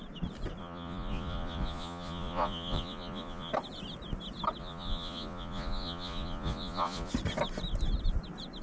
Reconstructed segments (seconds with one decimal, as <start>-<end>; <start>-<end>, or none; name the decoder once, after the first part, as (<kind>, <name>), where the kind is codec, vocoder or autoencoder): 0.6-3.5 (vocoder, Vocos); 4.6-7.1